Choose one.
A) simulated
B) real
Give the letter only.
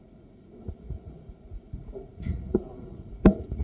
A